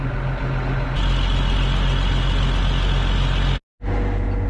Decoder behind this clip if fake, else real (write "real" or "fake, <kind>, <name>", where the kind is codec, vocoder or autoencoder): real